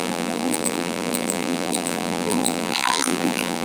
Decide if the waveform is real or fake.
fake